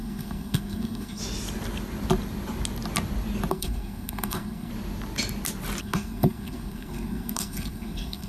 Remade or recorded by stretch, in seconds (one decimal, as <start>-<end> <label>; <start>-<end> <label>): 0.0-1.2 remade; 1.2-3.5 recorded; 3.5-4.7 remade; 4.7-5.8 recorded; 5.8-8.3 remade